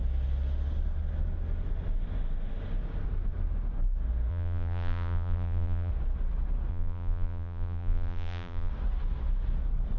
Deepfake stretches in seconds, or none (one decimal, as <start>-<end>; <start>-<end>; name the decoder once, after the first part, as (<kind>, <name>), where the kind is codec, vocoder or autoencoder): 4.3-5.9 (vocoder, BigVGAN v2); 6.7-8.7